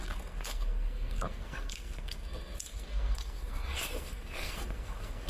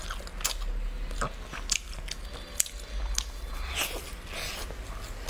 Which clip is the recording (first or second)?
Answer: second